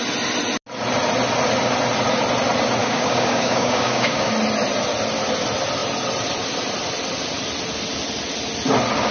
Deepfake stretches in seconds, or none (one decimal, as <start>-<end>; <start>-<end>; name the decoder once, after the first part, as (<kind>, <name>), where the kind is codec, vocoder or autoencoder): 2.8-4.3 (codec, DAC)